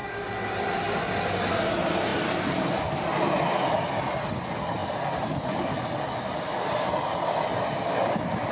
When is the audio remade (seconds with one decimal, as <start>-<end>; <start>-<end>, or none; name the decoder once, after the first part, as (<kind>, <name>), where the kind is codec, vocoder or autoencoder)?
none